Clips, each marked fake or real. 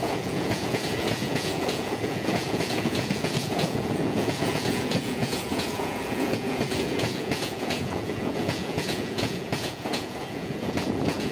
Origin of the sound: fake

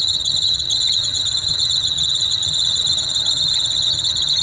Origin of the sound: fake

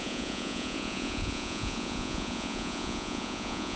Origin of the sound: fake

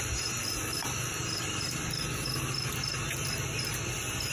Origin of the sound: real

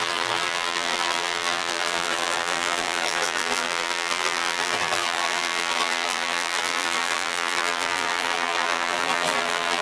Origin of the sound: fake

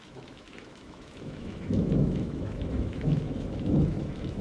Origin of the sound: fake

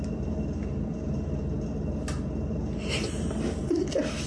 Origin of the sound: real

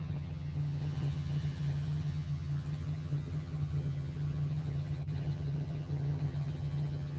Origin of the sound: fake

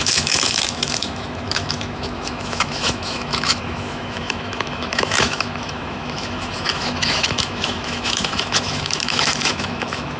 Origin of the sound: fake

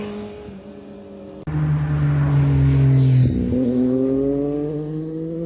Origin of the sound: real